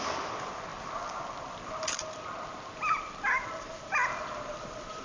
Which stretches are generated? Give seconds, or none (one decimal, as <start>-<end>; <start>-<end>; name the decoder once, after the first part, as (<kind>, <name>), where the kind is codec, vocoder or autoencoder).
none